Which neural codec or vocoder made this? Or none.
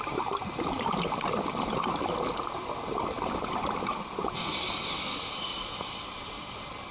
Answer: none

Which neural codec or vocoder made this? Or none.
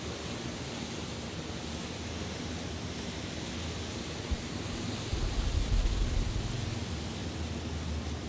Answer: none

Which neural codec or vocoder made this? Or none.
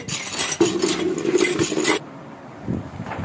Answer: none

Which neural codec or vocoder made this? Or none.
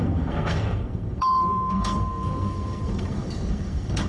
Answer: codec, SNAC